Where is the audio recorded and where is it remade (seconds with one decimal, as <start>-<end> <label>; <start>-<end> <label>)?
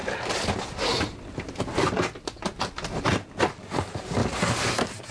0.0-5.1 recorded